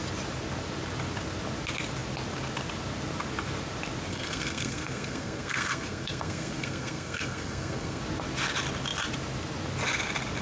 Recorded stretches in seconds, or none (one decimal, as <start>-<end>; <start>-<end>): 0.0-4.1; 8.0-10.4

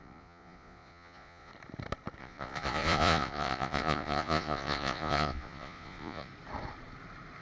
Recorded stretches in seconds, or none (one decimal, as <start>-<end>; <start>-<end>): 1.5-2.2; 6.3-7.4

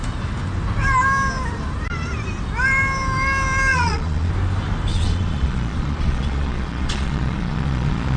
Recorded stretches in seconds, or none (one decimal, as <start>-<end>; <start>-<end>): 0.0-3.7; 4.3-4.9

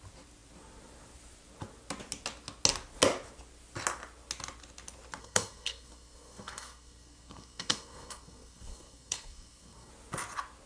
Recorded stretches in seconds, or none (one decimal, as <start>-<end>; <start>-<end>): 0.0-5.2; 9.9-10.7

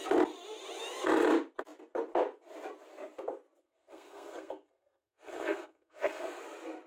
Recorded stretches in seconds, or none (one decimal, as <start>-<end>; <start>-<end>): 0.0-3.6; 6.4-6.9

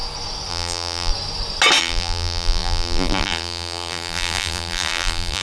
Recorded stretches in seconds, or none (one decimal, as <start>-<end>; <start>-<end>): 0.0-0.5; 1.1-1.8

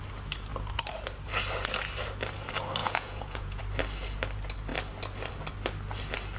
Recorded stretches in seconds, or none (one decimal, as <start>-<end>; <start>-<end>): 0.0-2.8; 3.6-6.4

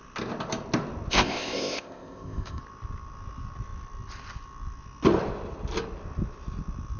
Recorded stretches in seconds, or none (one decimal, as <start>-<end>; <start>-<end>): 0.0-1.1; 2.6-7.0